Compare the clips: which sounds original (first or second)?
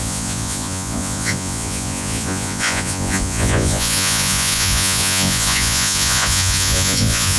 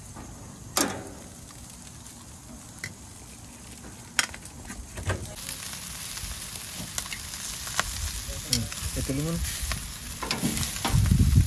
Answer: second